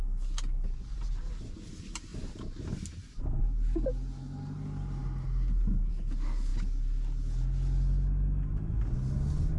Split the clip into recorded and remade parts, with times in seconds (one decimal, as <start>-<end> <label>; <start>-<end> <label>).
0.0-9.6 recorded